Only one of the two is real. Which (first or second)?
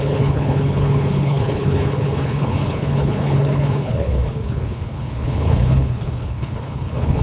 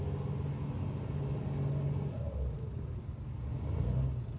second